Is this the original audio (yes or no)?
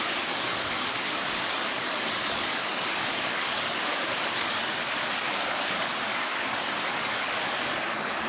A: no